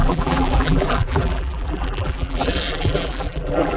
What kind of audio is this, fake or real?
fake